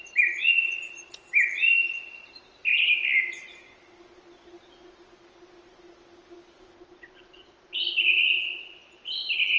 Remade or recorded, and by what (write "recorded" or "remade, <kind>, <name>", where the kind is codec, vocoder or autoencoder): recorded